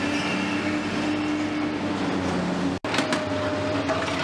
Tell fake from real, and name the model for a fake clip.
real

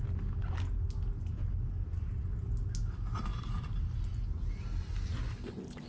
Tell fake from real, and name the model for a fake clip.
real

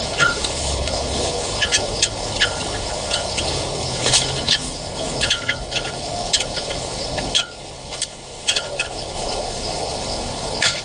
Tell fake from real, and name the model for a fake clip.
fake, codec, HILCodec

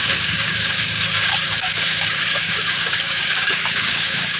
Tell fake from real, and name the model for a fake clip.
fake, codec, DAC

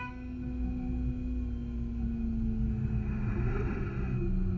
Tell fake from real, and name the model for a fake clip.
real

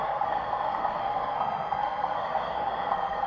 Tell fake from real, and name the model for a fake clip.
fake, codec, SNAC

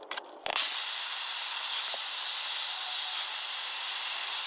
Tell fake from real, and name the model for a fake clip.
real